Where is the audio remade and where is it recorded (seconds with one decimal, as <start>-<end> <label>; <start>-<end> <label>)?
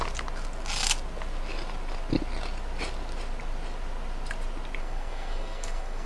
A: 0.0-4.8 recorded; 4.8-6.1 remade